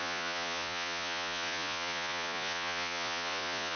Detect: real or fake fake